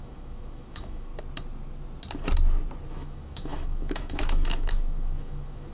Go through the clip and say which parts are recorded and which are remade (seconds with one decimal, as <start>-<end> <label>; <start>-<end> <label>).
0.0-1.1 remade; 1.1-2.9 recorded; 2.9-5.7 remade